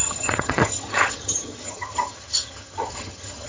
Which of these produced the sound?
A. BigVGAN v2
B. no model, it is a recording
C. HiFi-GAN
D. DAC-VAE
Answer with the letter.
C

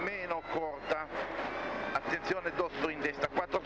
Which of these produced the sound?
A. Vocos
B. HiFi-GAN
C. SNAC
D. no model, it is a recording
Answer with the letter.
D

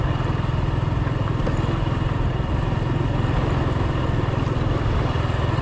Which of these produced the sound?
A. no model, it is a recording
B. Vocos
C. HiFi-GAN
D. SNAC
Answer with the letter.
A